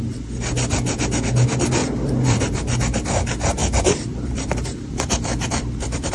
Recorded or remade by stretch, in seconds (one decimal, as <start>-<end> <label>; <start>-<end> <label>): 0.0-1.8 recorded; 1.8-2.4 remade; 2.4-3.6 recorded; 3.6-6.1 remade